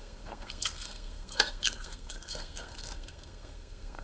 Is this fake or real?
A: fake